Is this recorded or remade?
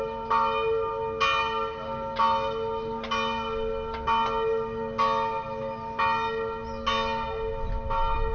recorded